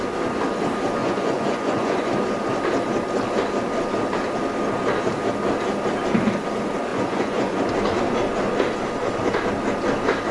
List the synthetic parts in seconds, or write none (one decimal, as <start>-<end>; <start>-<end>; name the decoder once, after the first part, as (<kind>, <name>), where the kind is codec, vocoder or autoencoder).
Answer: 1.0-2.1 (vocoder, Vocos); 6.9-7.6